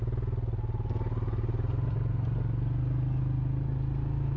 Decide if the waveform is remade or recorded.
recorded